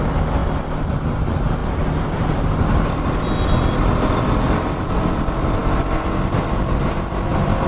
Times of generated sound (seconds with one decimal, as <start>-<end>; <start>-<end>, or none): 0.4-0.9